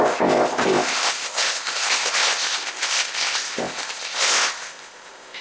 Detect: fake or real fake